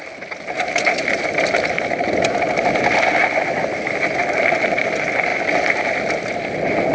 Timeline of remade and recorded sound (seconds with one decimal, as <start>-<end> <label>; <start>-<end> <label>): 0.0-6.9 recorded